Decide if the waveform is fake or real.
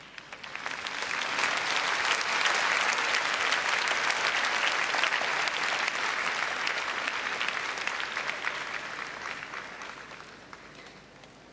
real